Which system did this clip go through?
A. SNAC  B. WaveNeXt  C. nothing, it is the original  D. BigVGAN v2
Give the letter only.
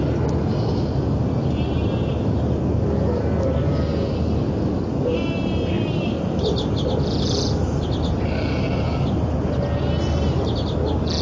C